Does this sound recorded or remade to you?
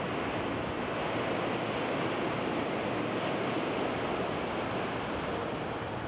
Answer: recorded